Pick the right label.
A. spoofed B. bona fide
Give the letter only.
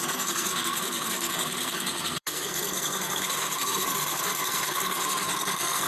A